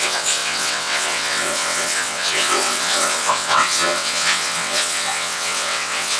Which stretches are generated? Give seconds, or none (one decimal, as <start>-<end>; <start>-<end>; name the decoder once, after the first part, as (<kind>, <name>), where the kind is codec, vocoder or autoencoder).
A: 0.0-6.2 (vocoder, WaveNeXt)